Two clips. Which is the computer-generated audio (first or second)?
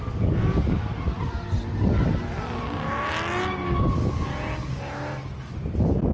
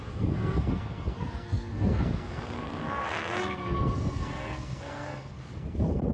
second